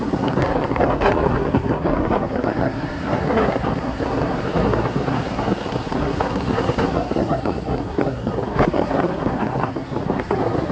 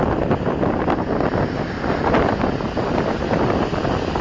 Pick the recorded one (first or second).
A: second